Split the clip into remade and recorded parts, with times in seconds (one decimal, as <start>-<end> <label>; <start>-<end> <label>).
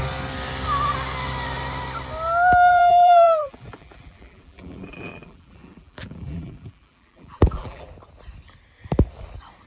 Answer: 0.0-2.7 recorded; 2.7-7.9 remade; 7.9-9.7 recorded